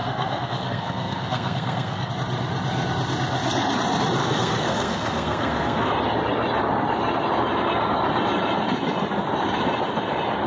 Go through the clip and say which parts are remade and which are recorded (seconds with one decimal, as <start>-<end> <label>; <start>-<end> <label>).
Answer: 0.0-2.1 remade; 2.1-4.2 recorded; 4.2-5.9 remade; 5.9-10.5 recorded

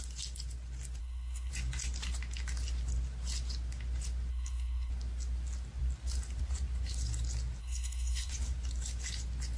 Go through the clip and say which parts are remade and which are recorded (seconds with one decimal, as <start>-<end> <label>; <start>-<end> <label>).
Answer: 0.0-1.0 recorded; 1.0-1.5 remade; 1.5-4.3 recorded; 4.3-4.9 remade; 4.9-7.6 recorded; 7.6-8.3 remade; 8.3-9.6 recorded

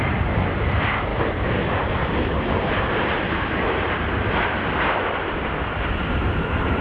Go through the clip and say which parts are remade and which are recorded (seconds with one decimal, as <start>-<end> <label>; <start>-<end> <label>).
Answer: 0.0-6.8 recorded

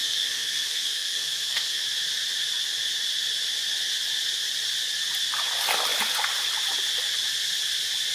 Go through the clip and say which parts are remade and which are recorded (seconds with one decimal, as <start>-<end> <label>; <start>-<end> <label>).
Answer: 0.0-1.8 remade; 1.8-8.1 recorded

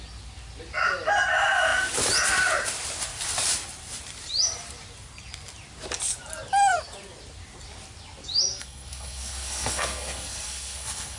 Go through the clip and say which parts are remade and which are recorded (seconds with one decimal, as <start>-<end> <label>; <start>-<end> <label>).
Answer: 0.0-8.5 recorded; 8.5-11.2 remade

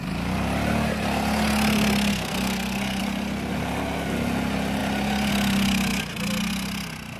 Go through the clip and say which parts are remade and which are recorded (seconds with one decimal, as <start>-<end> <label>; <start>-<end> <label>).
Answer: 0.0-2.1 recorded; 2.1-3.0 remade; 3.0-7.2 recorded

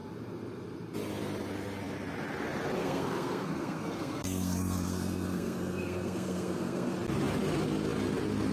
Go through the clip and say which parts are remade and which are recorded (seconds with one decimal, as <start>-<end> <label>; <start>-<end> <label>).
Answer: 0.0-2.8 recorded; 2.8-6.9 remade; 6.9-8.5 recorded

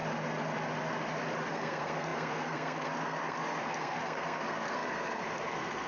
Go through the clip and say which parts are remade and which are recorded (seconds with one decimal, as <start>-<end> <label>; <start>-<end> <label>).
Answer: 0.0-1.5 recorded; 1.5-5.9 remade